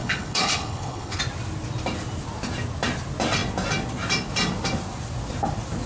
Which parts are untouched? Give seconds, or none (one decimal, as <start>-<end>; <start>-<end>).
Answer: 1.2-5.9